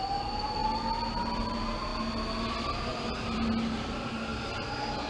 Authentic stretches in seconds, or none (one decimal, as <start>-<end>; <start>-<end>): 0.0-2.9; 3.5-4.3